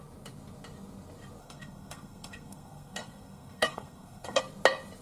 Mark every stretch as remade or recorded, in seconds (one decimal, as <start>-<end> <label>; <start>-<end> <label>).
0.0-1.4 recorded; 1.4-4.4 remade; 4.4-5.0 recorded